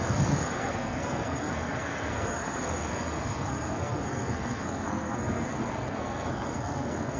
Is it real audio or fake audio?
fake